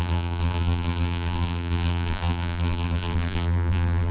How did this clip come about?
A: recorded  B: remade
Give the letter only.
B